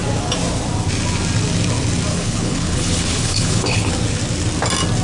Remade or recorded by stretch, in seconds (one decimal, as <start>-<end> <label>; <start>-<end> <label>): 0.0-2.1 recorded; 2.1-3.9 remade; 3.9-5.0 recorded